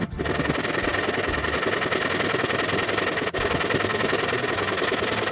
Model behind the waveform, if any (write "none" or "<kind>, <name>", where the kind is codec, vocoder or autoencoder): none